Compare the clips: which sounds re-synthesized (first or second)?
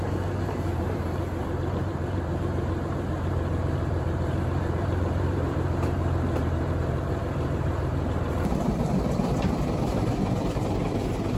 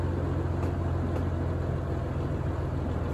first